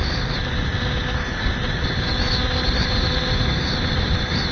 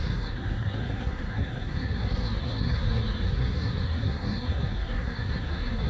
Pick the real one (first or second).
first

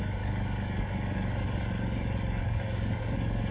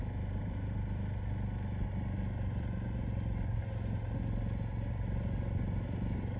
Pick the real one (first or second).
second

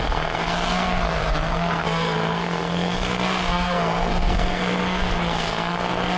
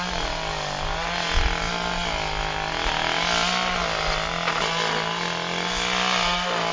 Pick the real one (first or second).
second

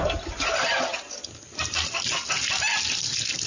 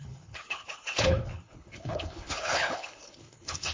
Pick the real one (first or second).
first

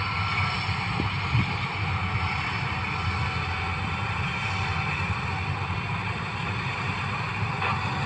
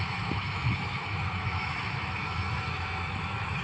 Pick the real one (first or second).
first